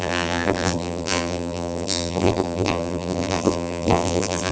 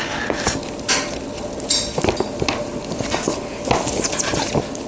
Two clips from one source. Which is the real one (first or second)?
second